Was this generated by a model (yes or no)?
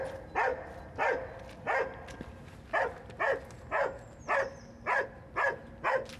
no